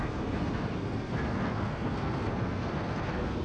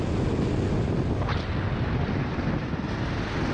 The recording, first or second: second